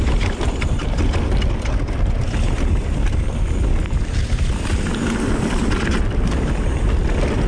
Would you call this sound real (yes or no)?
yes